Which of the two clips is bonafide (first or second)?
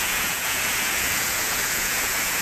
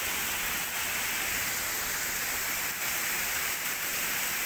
second